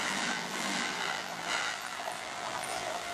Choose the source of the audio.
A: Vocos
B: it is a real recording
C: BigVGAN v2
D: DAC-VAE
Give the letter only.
C